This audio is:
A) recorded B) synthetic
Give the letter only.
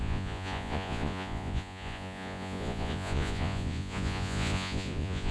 B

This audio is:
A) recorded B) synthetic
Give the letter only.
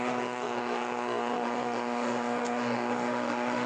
B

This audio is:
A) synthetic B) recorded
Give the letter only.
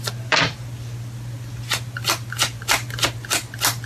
B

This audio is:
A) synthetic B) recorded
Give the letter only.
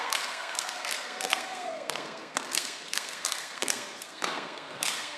A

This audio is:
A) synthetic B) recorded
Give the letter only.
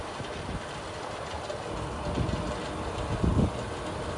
B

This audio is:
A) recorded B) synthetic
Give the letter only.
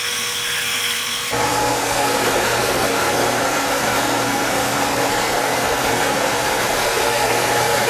B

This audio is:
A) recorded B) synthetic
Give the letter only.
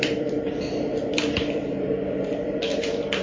B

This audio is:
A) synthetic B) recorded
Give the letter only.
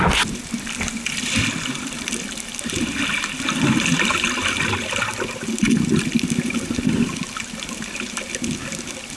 B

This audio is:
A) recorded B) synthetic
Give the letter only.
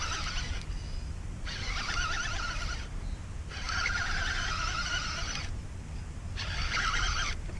A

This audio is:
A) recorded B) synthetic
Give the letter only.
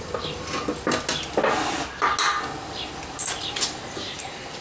A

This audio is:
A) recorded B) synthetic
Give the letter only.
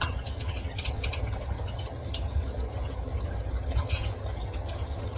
B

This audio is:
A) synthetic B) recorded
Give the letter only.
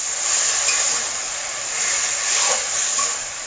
B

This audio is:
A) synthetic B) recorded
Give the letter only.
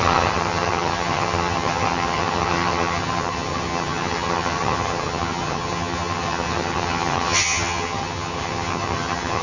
A